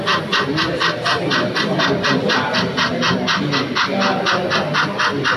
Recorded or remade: recorded